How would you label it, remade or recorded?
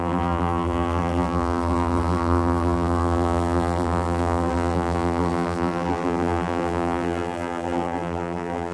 remade